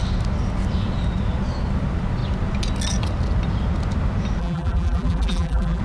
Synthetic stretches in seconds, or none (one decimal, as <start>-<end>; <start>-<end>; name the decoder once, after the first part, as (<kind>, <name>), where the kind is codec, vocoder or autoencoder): 4.4-5.8 (vocoder, BigVGAN v2)